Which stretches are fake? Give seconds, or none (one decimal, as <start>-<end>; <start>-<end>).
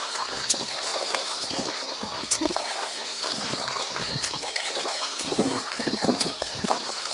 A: 0.0-7.1